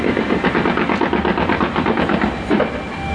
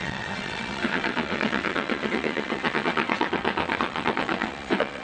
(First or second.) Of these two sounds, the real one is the first